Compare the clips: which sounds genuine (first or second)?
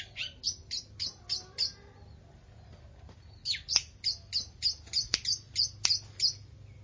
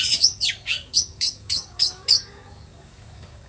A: first